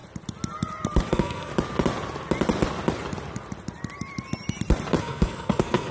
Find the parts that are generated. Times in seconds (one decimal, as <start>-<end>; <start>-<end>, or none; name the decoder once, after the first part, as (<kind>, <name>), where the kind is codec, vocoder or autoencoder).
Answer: 1.1-1.5 (codec, SNAC); 5.0-5.9